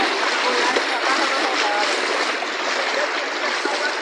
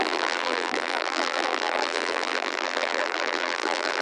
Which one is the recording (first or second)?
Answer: first